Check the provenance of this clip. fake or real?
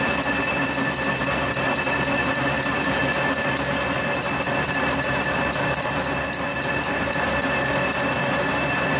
real